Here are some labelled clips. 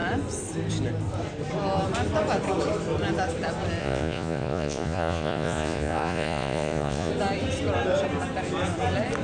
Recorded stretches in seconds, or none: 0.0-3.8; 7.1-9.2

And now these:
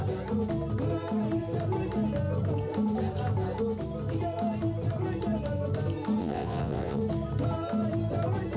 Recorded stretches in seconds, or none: 0.0-6.2; 7.0-8.6

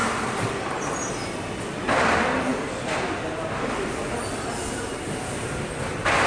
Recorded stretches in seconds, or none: 0.0-6.3

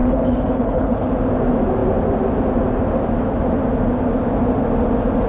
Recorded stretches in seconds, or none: 1.1-5.3

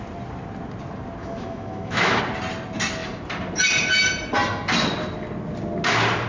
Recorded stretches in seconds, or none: 0.0-1.2; 2.2-6.3

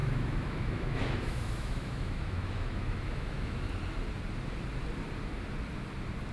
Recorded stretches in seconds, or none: 3.7-6.3